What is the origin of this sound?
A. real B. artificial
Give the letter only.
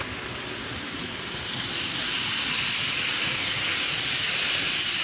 A